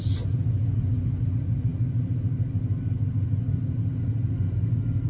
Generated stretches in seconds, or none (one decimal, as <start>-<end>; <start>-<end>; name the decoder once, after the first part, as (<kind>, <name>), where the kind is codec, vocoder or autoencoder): none